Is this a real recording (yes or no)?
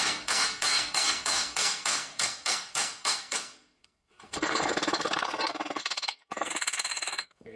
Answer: no